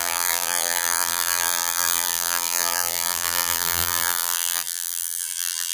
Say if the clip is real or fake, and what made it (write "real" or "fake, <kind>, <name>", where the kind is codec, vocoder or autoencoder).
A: fake, vocoder, BigVGAN v2